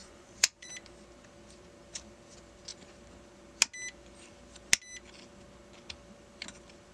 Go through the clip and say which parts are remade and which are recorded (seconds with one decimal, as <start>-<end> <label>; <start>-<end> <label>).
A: 0.0-0.7 remade; 0.7-6.9 recorded